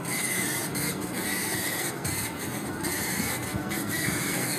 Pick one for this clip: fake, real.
fake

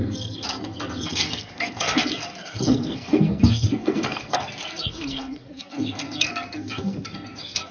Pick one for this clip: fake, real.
fake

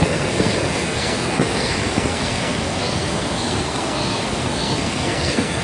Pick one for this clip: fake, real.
fake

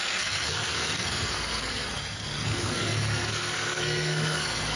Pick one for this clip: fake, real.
fake